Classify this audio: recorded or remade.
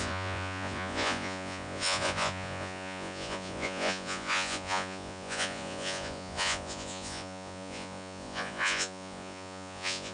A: remade